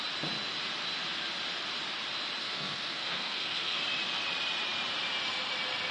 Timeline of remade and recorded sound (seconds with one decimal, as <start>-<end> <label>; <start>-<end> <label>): 0.0-2.4 recorded; 2.4-3.8 remade; 3.8-5.9 recorded